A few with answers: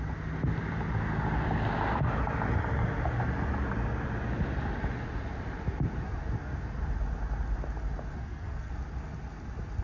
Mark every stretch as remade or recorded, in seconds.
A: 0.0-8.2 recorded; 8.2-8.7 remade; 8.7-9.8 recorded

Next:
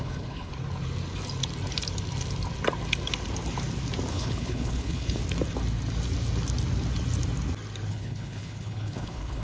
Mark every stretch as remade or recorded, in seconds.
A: 0.0-0.5 remade; 0.5-4.1 recorded; 4.1-5.2 remade; 5.2-7.9 recorded; 7.9-9.4 remade

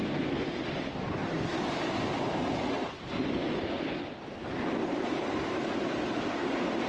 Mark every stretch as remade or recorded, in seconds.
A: 0.0-0.6 remade; 0.6-6.9 recorded

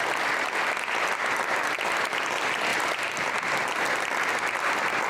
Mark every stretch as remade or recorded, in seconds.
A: 0.0-2.7 recorded; 2.7-3.3 remade; 3.3-5.1 recorded

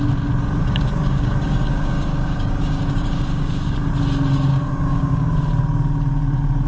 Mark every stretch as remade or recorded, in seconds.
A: 0.0-0.6 recorded; 0.6-3.9 remade; 3.9-4.5 recorded; 4.5-5.3 remade; 5.3-6.7 recorded

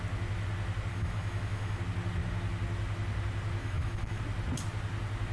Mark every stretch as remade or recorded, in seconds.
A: 0.0-0.9 recorded; 0.9-1.8 remade; 1.8-3.6 recorded; 3.6-4.2 remade; 4.2-5.3 recorded

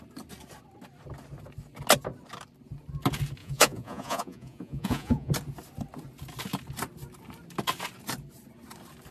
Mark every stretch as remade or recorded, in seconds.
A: 0.0-3.4 recorded; 3.4-5.3 remade; 5.3-9.1 recorded